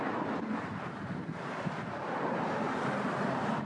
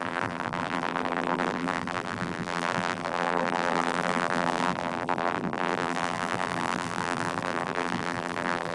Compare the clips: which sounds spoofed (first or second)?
second